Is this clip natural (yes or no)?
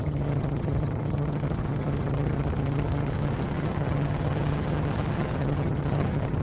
no